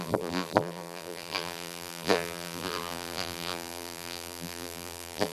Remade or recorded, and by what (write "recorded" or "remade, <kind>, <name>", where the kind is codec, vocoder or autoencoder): remade, vocoder, BigVGAN v2